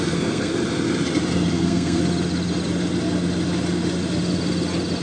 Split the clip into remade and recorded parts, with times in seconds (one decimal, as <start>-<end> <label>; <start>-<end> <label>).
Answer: 0.0-0.5 remade; 0.5-1.5 recorded; 1.5-2.0 remade; 2.0-5.0 recorded